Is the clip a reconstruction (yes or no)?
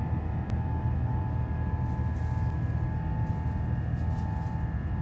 no